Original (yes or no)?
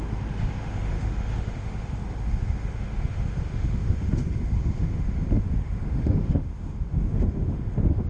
no